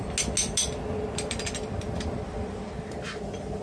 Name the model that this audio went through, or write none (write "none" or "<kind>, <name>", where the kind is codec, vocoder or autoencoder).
none